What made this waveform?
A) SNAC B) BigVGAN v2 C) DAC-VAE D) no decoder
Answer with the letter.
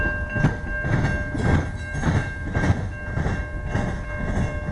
D